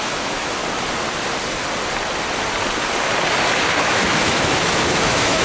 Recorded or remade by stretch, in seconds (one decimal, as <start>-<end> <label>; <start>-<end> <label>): 0.0-0.6 remade; 0.6-3.8 recorded; 3.8-5.4 remade